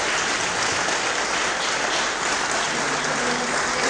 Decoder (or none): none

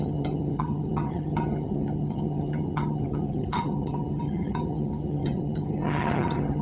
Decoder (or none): vocoder, HiFi-GAN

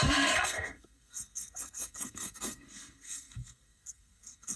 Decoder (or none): codec, SNAC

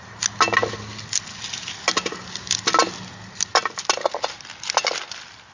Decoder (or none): none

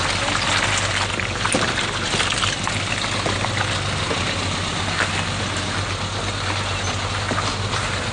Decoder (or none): none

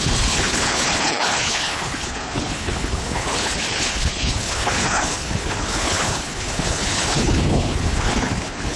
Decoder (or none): codec, HILCodec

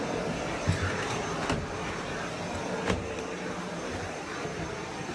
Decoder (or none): vocoder, BigVGAN v2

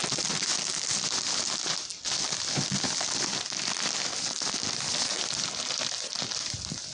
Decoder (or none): none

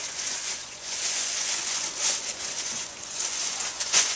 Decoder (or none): vocoder, Vocos